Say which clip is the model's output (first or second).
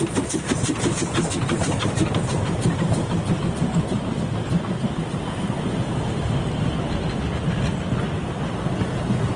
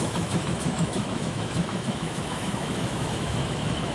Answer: second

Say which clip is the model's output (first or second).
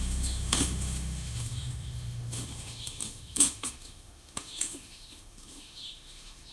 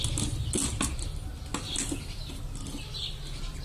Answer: first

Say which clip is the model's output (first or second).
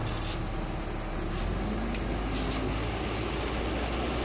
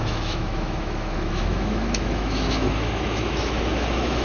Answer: second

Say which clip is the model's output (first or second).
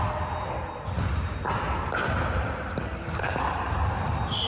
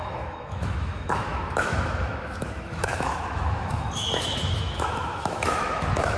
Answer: second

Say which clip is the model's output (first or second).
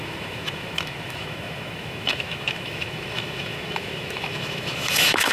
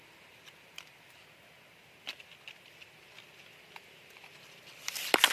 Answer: first